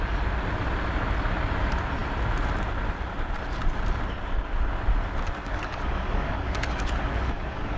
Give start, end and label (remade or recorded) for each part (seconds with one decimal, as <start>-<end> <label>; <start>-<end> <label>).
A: 0.0-5.4 recorded; 5.4-7.8 remade